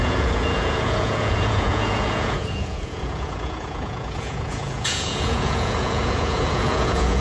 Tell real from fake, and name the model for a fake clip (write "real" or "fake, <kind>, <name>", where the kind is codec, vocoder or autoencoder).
fake, vocoder, Vocos